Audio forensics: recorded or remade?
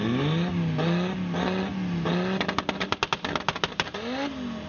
recorded